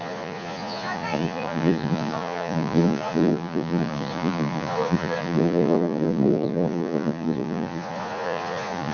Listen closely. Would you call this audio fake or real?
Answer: fake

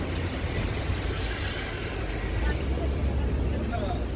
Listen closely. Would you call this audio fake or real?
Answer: real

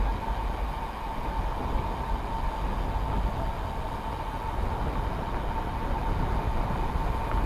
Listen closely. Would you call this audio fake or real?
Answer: real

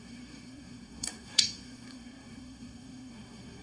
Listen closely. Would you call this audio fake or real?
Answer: fake